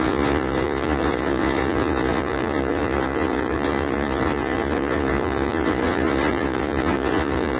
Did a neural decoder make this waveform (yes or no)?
yes